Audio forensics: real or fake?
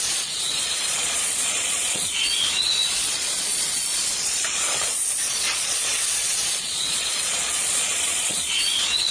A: fake